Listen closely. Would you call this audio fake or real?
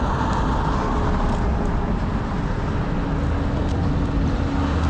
real